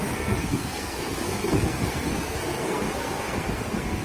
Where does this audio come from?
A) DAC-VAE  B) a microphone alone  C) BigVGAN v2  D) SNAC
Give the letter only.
D